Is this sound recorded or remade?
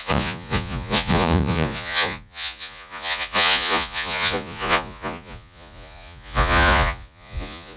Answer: remade